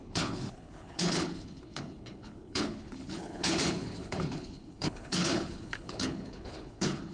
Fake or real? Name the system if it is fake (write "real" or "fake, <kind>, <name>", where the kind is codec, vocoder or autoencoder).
fake, codec, HILCodec